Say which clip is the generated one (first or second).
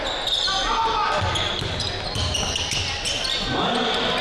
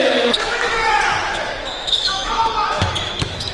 second